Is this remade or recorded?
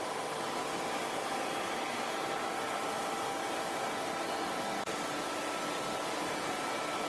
recorded